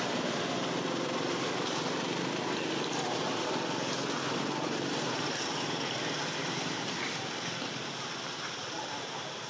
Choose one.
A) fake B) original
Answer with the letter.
B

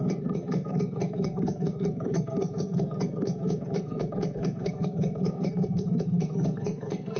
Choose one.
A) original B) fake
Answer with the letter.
B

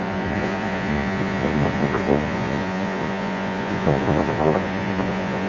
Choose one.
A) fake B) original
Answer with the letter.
A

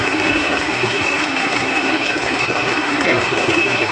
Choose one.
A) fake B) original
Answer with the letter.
A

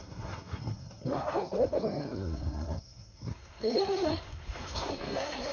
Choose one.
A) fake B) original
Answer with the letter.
A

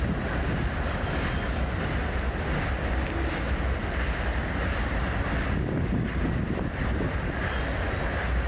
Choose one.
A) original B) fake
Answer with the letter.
B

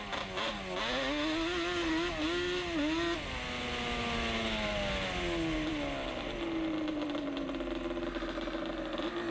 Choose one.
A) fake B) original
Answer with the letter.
B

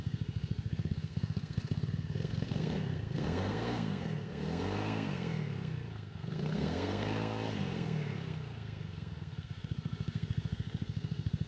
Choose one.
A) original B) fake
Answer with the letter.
B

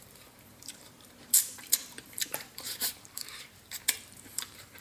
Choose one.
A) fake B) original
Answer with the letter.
A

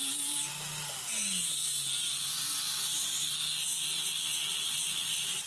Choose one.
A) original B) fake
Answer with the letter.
A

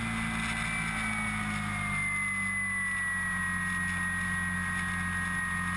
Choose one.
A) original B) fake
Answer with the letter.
A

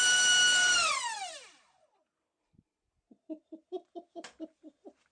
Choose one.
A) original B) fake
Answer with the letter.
B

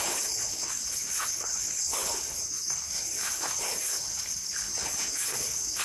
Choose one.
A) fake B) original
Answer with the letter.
A